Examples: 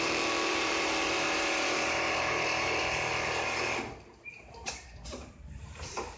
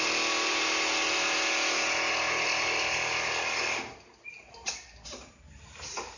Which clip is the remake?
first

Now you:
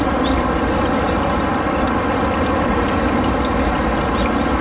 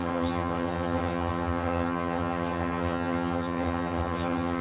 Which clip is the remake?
second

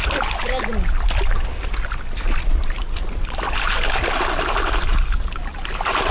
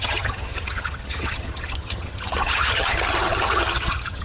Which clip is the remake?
second